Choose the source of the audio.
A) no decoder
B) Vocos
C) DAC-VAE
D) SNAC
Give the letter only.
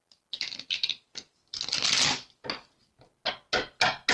A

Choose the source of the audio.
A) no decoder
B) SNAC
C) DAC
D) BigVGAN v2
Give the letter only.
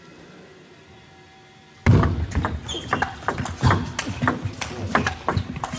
A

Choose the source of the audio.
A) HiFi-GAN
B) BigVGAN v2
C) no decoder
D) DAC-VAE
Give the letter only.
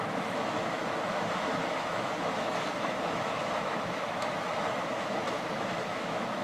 D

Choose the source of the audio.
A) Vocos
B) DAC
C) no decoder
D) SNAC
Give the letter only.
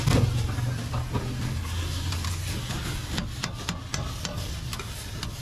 C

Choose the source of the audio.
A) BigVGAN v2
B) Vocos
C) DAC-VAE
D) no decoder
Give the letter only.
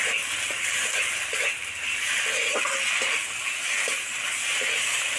D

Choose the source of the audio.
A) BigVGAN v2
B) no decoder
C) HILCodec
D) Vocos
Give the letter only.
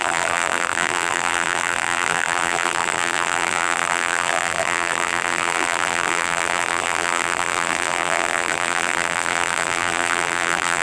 A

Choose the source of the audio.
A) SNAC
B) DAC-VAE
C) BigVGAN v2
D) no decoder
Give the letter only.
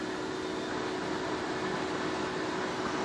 D